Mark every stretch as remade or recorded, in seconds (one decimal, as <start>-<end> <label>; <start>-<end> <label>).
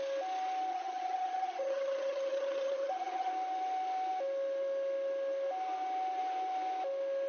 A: 0.0-0.7 recorded; 0.7-3.3 remade; 3.3-7.3 recorded